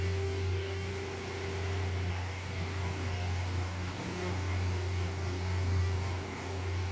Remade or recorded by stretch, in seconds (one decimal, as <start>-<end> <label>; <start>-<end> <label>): 0.0-0.9 remade; 0.9-2.1 recorded; 2.1-6.9 remade